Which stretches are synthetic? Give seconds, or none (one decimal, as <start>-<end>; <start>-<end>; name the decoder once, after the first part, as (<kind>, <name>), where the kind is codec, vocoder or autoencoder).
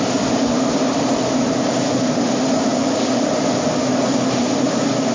none